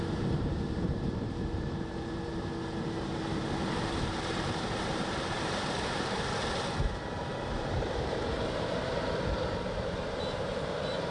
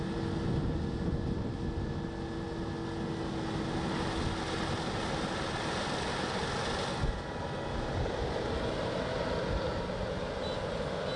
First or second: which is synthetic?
first